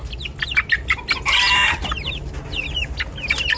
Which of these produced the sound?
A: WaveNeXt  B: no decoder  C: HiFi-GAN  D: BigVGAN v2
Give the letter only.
B